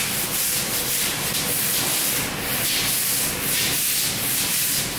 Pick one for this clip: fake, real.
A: real